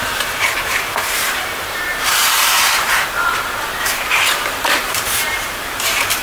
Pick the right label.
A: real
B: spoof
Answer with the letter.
B